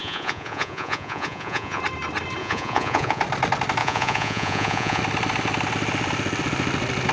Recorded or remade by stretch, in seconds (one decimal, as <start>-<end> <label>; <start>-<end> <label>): 0.0-1.8 remade; 1.8-2.4 recorded; 2.4-3.2 remade; 3.2-3.8 recorded; 3.8-5.0 remade; 5.0-7.1 recorded